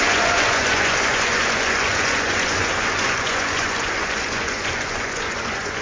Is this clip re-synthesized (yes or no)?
yes